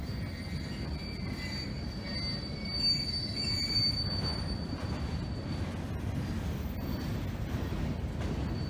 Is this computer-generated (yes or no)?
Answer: no